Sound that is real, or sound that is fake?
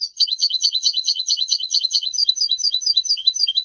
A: fake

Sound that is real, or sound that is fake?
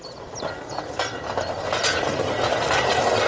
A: real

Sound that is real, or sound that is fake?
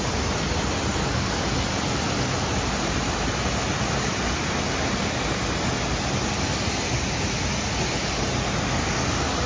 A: real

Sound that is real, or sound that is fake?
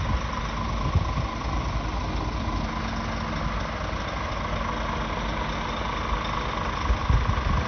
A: real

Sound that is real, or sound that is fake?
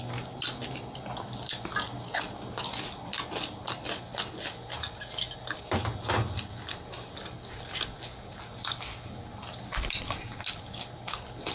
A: real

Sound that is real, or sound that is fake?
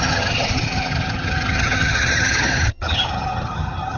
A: fake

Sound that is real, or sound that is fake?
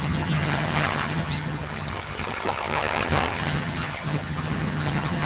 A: fake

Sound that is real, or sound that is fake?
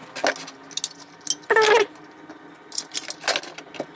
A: real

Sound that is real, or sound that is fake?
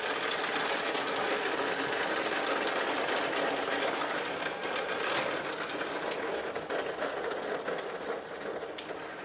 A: real